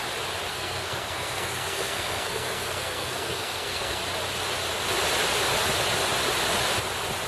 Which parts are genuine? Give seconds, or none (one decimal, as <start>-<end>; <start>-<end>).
0.0-0.5; 4.0-7.3